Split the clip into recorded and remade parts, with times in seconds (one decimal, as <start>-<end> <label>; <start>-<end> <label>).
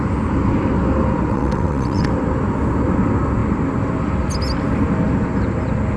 0.0-1.3 recorded; 1.3-2.1 remade; 2.1-6.0 recorded